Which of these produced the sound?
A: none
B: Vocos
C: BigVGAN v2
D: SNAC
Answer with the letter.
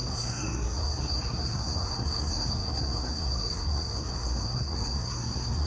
D